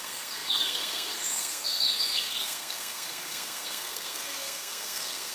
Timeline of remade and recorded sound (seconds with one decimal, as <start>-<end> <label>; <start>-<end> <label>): 0.0-5.3 remade